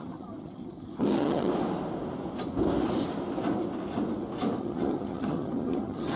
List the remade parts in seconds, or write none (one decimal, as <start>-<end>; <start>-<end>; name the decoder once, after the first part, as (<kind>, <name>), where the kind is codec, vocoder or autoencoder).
0.0-1.5 (vocoder, HiFi-GAN); 4.6-6.2